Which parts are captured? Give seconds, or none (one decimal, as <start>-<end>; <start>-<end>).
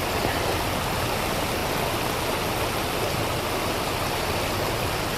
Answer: 0.0-5.2